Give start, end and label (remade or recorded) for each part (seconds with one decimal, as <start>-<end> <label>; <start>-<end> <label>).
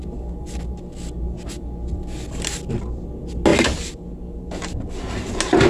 0.0-5.7 recorded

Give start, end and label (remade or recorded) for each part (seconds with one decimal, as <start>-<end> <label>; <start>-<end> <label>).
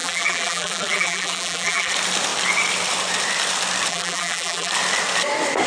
0.0-1.9 remade; 1.9-3.9 recorded; 3.9-4.7 remade; 4.7-5.7 recorded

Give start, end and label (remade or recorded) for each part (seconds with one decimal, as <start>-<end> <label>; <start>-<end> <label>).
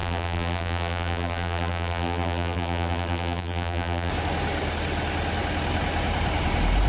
0.0-4.1 remade; 4.1-6.9 recorded